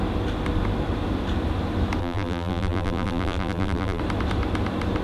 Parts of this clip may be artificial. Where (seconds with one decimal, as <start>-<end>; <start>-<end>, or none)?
2.0-4.0